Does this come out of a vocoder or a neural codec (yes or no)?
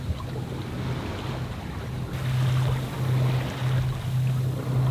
no